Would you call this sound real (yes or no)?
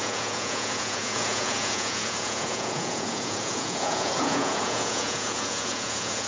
no